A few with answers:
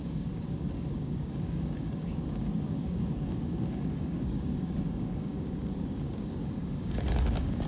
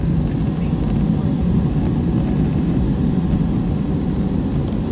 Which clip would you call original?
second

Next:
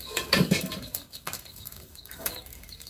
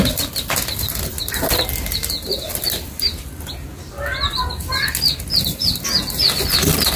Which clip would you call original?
second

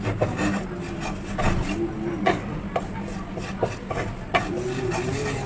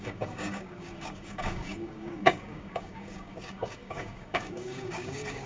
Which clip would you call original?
first